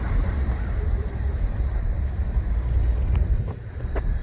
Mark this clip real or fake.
fake